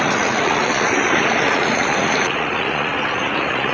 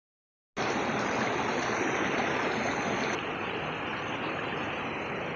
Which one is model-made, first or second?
first